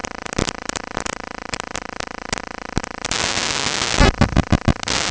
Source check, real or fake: real